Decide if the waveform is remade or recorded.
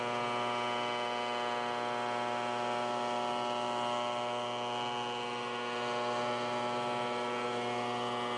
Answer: recorded